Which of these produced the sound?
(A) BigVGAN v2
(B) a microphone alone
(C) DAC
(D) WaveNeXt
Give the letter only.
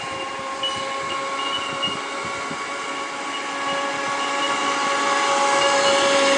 B